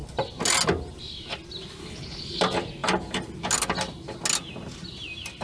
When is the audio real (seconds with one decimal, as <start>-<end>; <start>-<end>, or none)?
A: 0.0-1.8; 2.4-5.4